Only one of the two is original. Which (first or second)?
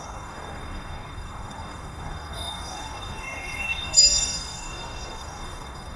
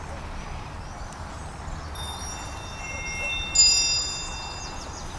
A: second